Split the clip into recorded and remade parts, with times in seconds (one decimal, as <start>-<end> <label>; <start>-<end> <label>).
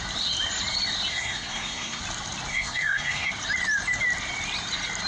0.0-1.1 recorded; 1.1-2.0 remade; 2.0-2.5 recorded; 2.5-3.3 remade; 3.3-5.1 recorded